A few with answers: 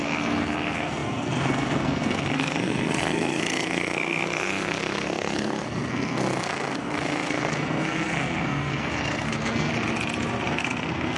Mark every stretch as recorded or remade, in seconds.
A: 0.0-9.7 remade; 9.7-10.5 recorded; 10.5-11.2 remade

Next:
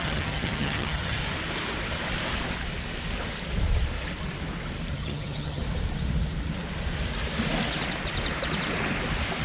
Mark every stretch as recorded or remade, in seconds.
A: 0.0-1.2 remade; 1.2-4.9 recorded; 4.9-5.6 remade; 5.6-9.4 recorded